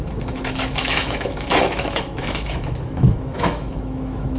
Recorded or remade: remade